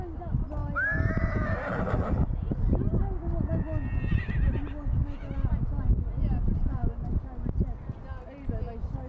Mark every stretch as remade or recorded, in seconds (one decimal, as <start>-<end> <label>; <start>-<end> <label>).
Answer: 0.0-9.1 recorded